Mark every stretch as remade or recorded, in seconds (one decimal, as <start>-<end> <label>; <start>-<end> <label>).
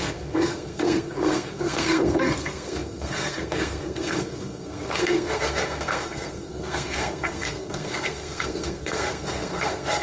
0.0-10.0 remade